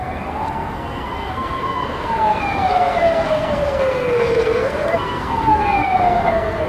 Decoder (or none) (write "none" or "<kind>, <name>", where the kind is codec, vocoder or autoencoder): codec, SNAC